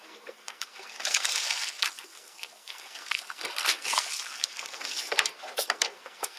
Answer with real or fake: fake